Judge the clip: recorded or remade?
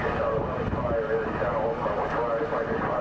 recorded